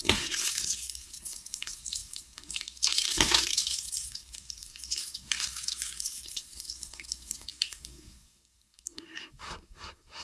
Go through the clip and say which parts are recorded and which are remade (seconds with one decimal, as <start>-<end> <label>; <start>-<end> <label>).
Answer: 0.0-10.2 remade